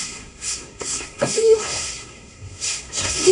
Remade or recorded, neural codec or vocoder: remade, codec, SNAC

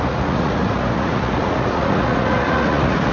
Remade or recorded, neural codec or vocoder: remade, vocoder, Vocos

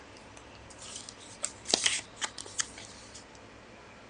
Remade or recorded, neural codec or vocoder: recorded